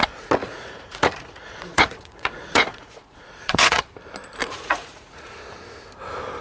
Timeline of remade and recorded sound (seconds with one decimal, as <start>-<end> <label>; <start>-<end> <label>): 0.0-0.4 recorded; 0.4-3.8 remade; 3.8-4.4 recorded; 4.4-5.3 remade; 5.3-6.4 recorded